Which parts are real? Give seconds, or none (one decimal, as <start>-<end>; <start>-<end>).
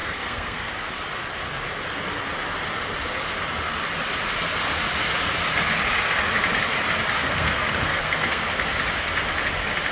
0.7-7.2; 8.4-9.9